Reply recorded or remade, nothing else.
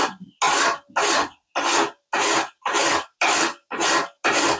recorded